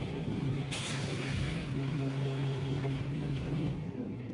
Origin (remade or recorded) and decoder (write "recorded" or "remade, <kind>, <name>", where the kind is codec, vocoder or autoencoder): remade, codec, SNAC